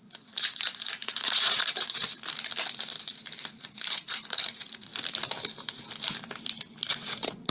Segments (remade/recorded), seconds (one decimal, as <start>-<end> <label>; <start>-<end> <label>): 0.0-2.1 remade; 2.1-3.5 recorded; 3.5-4.9 remade; 4.9-6.9 recorded; 6.9-7.5 remade